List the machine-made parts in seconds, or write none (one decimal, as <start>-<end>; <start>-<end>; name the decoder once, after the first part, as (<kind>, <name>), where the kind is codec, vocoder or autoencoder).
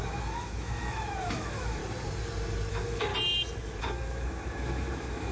0.0-1.8 (autoencoder, DAC-VAE); 2.7-3.1; 3.8-5.3